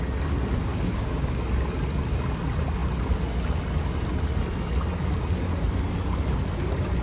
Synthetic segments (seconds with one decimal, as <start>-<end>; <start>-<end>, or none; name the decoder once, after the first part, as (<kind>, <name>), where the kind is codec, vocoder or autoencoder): 0.7-1.4 (codec, DAC)